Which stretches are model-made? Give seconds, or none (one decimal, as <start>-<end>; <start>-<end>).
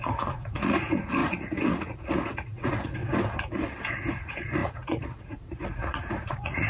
0.0-3.0; 4.0-6.7